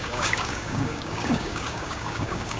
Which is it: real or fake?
fake